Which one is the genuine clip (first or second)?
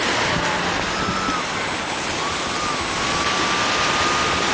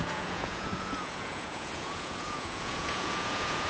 first